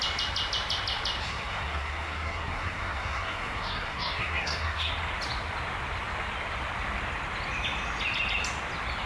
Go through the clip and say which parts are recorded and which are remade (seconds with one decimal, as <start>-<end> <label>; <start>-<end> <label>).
0.0-1.2 recorded; 1.2-4.9 remade; 4.9-9.1 recorded